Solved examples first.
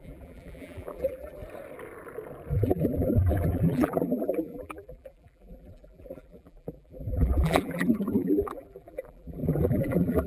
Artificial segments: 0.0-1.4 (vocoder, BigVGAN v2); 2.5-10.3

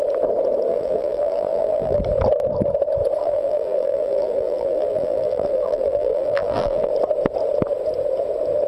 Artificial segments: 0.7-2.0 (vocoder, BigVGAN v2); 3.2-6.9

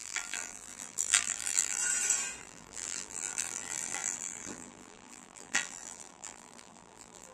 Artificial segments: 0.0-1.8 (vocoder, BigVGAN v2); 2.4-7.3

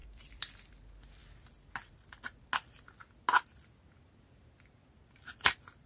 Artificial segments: 0.0-0.7 (vocoder, BigVGAN v2)

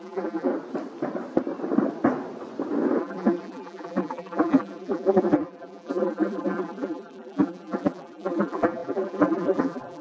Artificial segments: 0.0-0.5 (vocoder, BigVGAN v2); 3.0-10.0

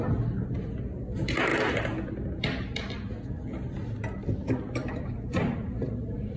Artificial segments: 5.4-6.4 (vocoder, BigVGAN v2)

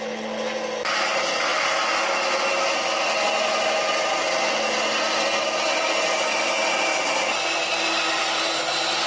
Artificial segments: none